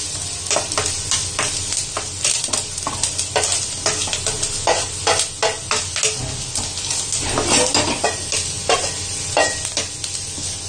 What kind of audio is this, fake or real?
real